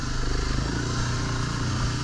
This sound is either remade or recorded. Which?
recorded